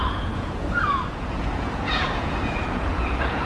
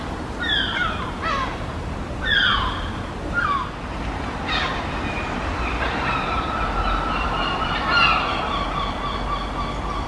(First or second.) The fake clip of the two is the first